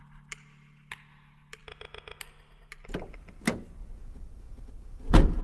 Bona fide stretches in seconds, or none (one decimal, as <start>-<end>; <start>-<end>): 0.0-3.8

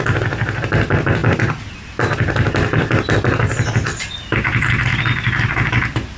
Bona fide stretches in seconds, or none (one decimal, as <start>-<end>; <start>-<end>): 0.0-6.2

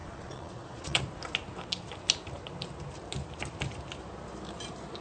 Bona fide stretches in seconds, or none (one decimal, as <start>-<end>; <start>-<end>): 1.0-5.0

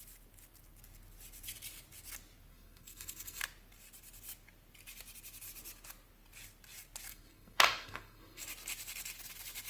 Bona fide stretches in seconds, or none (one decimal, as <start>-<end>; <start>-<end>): 0.0-2.5; 3.4-7.1; 8.4-9.7

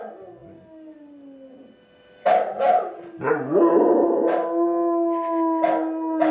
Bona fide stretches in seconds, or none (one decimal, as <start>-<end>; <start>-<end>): 0.0-6.3